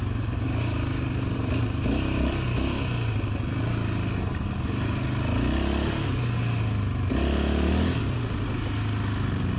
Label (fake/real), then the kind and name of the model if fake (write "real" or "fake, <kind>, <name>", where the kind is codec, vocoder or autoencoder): real